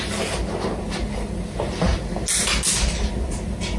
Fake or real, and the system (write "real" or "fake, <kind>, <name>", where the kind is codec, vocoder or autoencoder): real